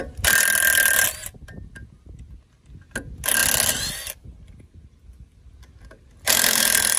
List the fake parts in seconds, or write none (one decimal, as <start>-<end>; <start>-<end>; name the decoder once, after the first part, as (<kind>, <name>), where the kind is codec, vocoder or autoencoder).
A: none